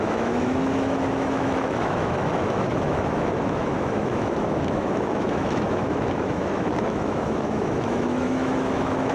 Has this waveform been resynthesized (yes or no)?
yes